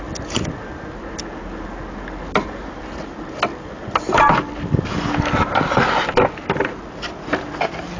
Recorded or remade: recorded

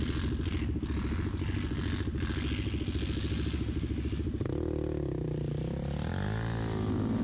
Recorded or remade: recorded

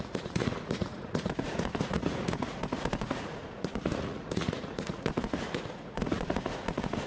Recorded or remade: remade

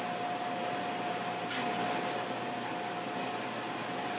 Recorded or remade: recorded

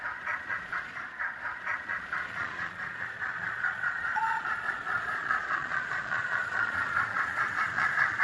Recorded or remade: remade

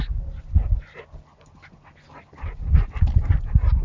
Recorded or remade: recorded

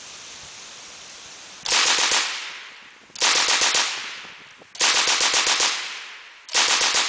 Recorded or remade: recorded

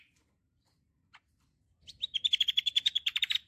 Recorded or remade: remade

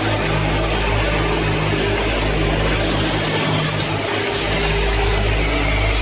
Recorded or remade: recorded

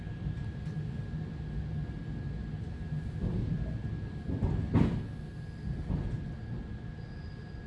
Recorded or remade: recorded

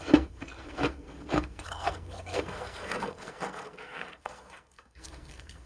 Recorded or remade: remade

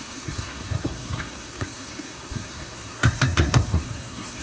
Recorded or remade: remade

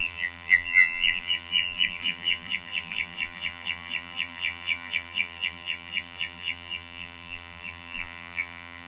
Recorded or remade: remade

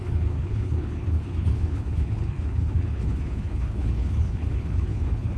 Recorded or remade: remade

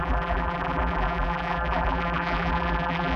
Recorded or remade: remade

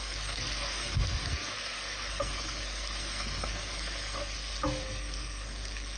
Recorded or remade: remade